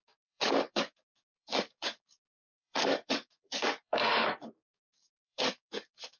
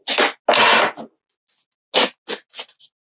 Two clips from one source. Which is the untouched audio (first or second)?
second